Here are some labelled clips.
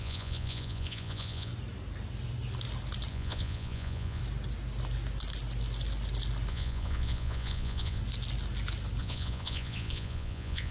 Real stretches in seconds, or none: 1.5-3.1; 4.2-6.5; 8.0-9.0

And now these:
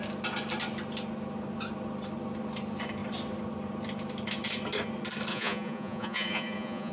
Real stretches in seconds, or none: 0.0-5.3

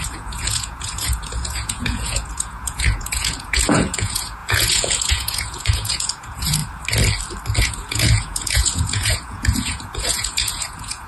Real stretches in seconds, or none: 6.6-7.6

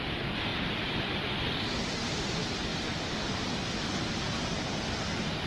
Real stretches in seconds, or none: 0.0-5.5

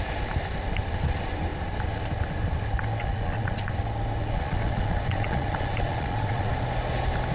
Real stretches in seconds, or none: 0.0-3.0; 3.8-4.2; 6.5-7.3

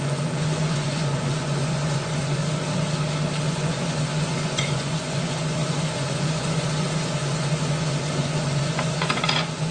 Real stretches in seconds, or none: 2.4-3.5